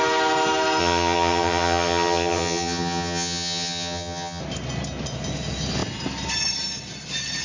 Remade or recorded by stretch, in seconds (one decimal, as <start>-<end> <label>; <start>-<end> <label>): 0.0-0.8 recorded; 0.8-4.4 remade; 4.4-7.4 recorded